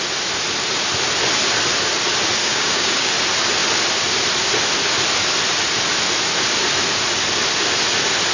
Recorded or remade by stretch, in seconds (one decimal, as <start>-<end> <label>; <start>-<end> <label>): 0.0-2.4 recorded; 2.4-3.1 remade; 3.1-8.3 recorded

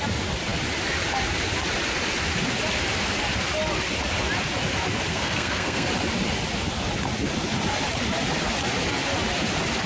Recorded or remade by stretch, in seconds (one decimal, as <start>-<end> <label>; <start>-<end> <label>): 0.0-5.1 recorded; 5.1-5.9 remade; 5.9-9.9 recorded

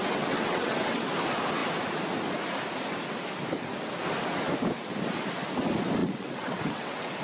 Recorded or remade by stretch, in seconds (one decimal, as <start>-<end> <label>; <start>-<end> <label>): 0.0-1.1 remade; 1.1-6.0 recorded; 6.0-7.2 remade

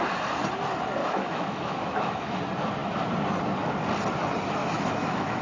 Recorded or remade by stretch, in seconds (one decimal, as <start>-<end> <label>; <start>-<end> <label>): 0.0-1.0 recorded; 1.0-2.4 remade; 2.4-4.6 recorded; 4.6-5.4 remade

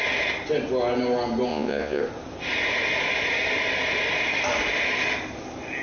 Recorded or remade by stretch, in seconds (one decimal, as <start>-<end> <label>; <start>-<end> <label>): 0.0-1.5 recorded; 1.5-2.0 remade; 2.0-5.8 recorded

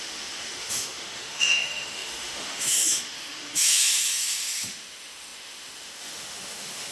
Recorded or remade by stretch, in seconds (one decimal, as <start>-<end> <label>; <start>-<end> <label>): 0.0-6.9 remade

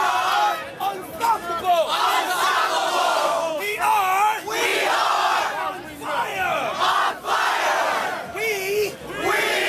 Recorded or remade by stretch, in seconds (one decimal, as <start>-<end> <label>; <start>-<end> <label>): 0.0-3.0 recorded; 3.0-3.8 remade; 3.8-9.7 recorded